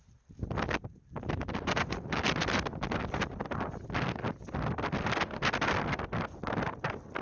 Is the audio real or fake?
real